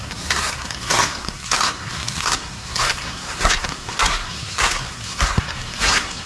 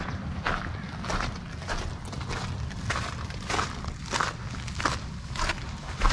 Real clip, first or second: second